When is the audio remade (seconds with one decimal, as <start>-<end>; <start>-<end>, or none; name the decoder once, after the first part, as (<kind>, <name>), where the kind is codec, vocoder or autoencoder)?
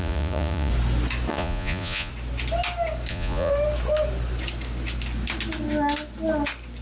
0.0-0.7 (vocoder, Vocos); 1.3-2.1; 3.1-3.5